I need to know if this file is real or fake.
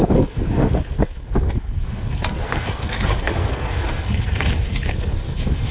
fake